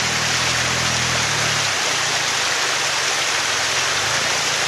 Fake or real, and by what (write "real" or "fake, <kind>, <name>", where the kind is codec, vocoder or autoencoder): real